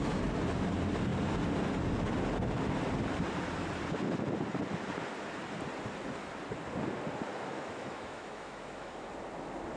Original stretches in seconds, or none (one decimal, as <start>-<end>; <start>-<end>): 0.0-7.3; 9.1-9.8